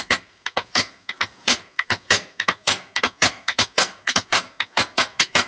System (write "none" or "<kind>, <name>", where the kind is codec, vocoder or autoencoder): codec, SNAC